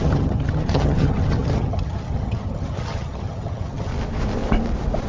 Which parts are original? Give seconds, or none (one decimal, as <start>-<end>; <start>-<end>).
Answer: 3.9-5.1